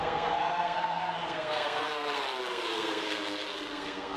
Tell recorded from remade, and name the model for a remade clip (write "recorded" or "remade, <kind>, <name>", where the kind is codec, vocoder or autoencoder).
remade, codec, SNAC